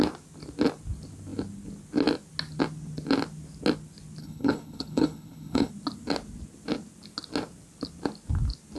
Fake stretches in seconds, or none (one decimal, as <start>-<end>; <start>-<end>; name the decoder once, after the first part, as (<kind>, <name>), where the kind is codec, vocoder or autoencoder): 4.2-5.7 (codec, HILCodec)